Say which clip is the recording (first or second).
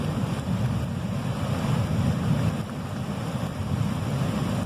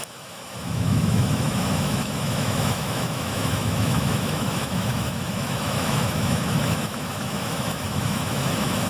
first